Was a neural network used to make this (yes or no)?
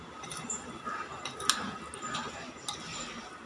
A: no